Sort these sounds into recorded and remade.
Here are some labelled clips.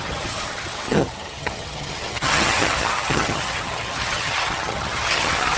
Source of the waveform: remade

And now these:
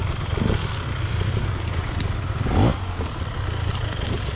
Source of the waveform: recorded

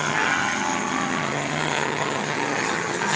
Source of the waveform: remade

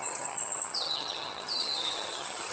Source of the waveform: remade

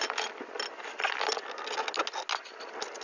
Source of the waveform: recorded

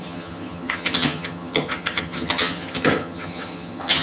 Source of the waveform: remade